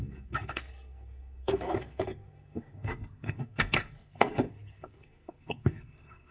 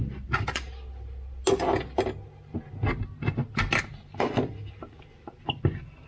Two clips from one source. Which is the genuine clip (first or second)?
second